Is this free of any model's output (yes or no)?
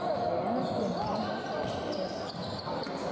yes